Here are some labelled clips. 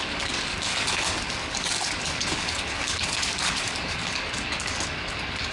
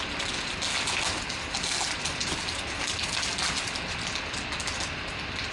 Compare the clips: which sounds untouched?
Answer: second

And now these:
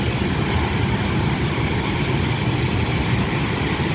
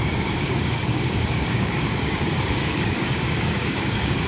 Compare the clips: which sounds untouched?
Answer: first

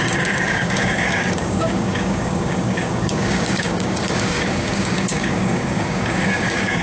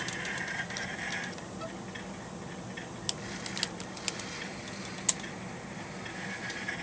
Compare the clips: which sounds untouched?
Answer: second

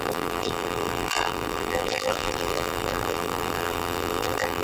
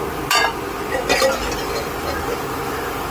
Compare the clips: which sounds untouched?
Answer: second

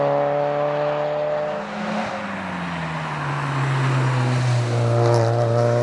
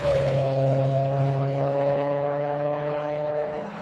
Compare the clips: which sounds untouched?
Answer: first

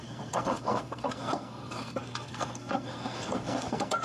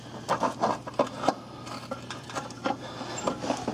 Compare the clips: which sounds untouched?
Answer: second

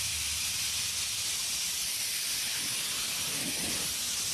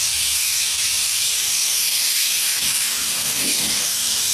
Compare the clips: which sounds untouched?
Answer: first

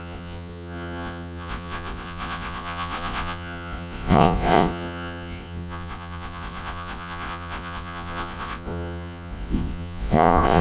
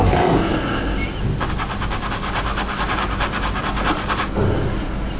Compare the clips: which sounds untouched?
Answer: second